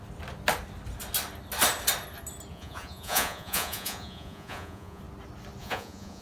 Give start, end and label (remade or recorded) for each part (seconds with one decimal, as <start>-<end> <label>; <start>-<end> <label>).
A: 0.0-2.5 recorded; 2.5-5.0 remade; 5.0-5.6 recorded; 5.6-6.2 remade

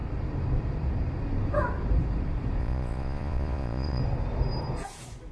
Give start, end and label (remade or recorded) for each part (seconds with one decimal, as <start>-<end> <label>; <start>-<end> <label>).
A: 0.0-2.6 recorded; 2.6-4.0 remade; 4.0-5.3 recorded

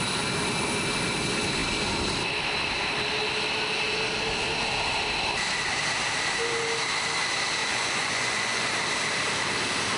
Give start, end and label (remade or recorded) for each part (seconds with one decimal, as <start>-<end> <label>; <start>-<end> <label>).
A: 0.0-7.6 recorded; 7.6-8.7 remade; 8.7-10.0 recorded

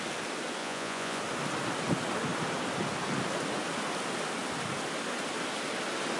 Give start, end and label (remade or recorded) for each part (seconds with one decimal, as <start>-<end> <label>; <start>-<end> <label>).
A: 0.0-0.6 recorded; 0.6-1.2 remade; 1.2-6.2 recorded